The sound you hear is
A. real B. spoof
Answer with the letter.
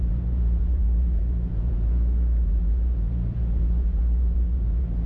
B